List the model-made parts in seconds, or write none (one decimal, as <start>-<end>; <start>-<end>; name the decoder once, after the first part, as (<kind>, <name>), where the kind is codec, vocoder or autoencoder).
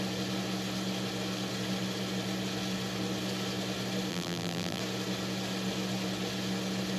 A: 4.1-4.8 (vocoder, BigVGAN v2)